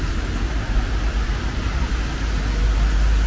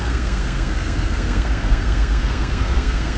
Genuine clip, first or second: first